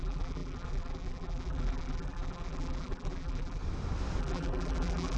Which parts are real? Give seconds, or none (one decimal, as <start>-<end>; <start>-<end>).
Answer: 3.6-4.2